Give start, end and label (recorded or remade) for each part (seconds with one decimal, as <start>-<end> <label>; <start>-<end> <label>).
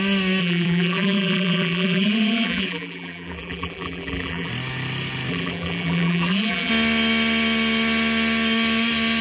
0.0-0.4 recorded; 0.4-4.5 remade; 4.5-5.3 recorded; 5.3-6.7 remade; 6.7-9.2 recorded